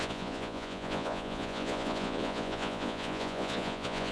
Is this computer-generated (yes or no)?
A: yes